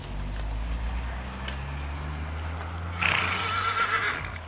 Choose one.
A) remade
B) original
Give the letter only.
B